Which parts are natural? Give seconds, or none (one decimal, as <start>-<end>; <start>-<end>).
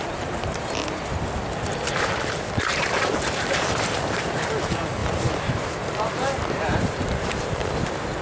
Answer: 0.8-2.6